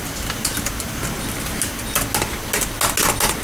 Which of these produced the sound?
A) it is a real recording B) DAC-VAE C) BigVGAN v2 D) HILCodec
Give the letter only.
A